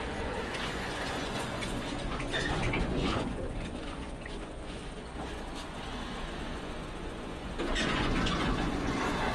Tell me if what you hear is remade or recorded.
remade